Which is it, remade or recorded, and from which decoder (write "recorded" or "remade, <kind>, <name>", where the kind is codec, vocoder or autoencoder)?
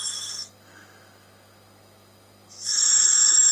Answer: remade, autoencoder, DAC-VAE